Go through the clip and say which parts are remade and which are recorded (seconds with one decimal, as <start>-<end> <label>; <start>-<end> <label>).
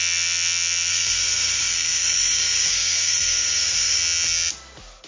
0.0-0.9 recorded; 0.9-4.0 remade; 4.0-5.1 recorded